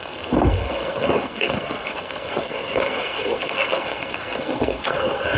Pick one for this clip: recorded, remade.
remade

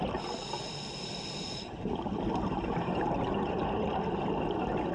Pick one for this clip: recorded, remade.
recorded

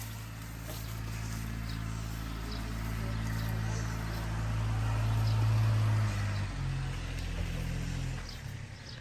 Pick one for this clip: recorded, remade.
recorded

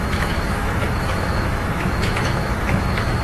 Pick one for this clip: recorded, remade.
remade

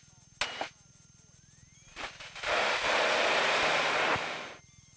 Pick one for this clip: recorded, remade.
recorded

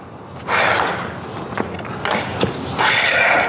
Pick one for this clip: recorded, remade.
recorded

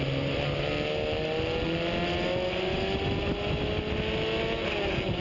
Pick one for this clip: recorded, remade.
recorded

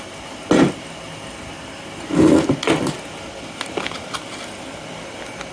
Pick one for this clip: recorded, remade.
recorded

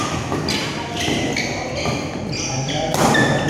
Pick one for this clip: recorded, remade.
recorded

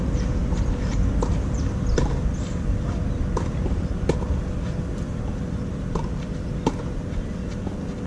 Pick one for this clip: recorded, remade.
recorded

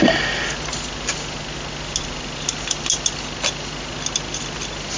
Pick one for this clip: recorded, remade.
recorded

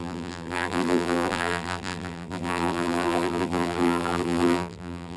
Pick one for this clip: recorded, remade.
remade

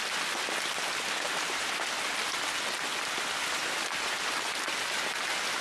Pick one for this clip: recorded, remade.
recorded